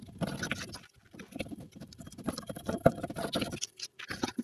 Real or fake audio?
real